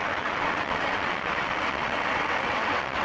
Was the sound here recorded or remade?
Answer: remade